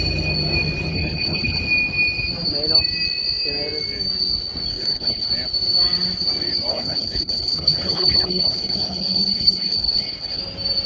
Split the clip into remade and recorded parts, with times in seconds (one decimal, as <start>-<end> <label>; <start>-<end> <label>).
0.0-0.9 recorded; 0.9-1.6 remade; 1.6-4.7 recorded; 4.7-5.3 remade; 5.3-6.7 recorded; 6.7-10.4 remade; 10.4-10.9 recorded